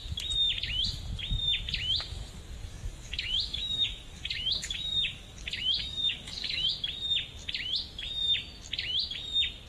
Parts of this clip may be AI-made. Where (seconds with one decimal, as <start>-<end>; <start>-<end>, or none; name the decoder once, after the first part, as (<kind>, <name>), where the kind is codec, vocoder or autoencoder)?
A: 2.6-6.7 (codec, DAC)